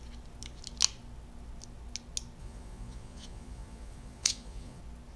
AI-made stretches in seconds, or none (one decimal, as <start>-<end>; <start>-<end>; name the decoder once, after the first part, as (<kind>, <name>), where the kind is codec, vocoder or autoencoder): 2.4-4.8 (vocoder, Vocos)